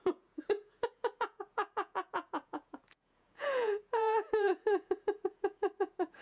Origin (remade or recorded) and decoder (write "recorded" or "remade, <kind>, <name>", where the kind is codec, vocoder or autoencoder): remade, vocoder, Vocos